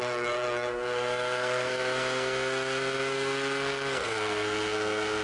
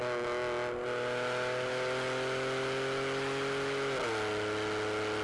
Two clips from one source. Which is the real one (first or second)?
second